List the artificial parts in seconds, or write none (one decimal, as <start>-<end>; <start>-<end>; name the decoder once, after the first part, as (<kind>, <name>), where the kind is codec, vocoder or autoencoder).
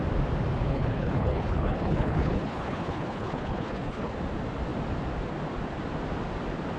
0.7-4.1 (codec, HILCodec)